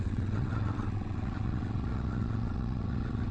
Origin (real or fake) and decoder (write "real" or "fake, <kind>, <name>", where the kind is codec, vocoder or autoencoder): fake, vocoder, WaveNeXt